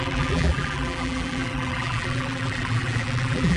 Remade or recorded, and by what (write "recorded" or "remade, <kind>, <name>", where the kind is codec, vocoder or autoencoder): remade, vocoder, BigVGAN v2